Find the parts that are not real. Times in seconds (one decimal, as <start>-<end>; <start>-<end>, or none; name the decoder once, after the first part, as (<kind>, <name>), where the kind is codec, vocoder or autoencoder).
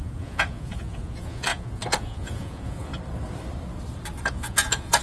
0.0-2.9 (vocoder, Vocos); 4.3-5.0